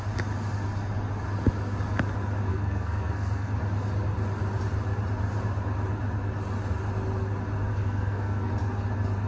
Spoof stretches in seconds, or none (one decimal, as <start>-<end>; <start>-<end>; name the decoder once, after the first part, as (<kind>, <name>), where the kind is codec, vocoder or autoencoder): 2.5-3.5 (codec, SNAC); 7.7-8.5

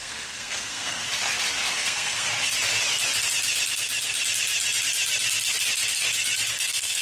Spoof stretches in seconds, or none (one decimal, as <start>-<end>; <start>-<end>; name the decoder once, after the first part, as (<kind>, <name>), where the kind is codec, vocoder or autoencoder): 0.0-1.0 (codec, SNAC); 1.7-2.3; 6.5-7.0

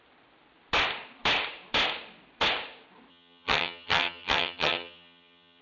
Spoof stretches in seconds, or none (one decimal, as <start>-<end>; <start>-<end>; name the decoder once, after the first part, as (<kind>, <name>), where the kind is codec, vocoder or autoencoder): 3.1-5.6 (vocoder, HiFi-GAN)